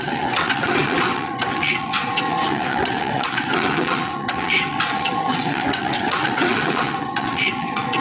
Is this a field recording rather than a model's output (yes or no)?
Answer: no